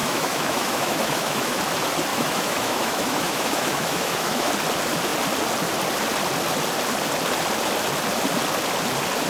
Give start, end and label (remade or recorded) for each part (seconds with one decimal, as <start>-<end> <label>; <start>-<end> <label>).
0.0-1.6 remade; 1.6-2.1 recorded; 2.1-4.5 remade; 4.5-9.3 recorded